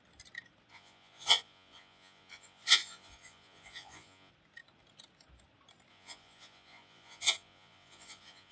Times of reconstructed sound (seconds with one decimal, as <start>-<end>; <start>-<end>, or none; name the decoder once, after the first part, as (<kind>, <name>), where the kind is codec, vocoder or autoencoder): 0.7-4.3 (vocoder, Vocos); 5.9-8.5